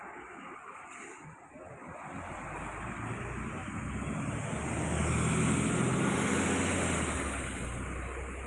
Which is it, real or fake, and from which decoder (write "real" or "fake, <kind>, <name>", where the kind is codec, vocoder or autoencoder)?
real